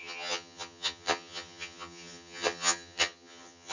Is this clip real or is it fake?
fake